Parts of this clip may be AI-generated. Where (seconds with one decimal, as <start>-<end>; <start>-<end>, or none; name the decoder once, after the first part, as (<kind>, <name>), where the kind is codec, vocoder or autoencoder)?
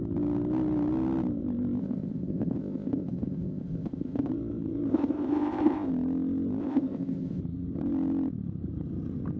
1.8-4.3 (codec, ZipCodec); 4.9-5.9; 6.6-7.4